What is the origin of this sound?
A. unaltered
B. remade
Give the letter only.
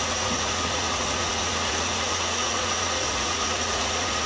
B